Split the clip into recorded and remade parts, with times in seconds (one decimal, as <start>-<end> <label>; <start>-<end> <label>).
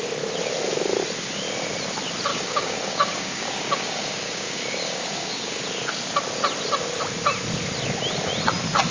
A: 0.0-2.3 recorded; 2.3-5.6 remade; 5.6-8.9 recorded